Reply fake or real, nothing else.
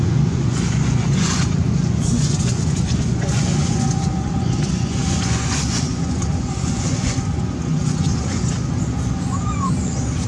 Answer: fake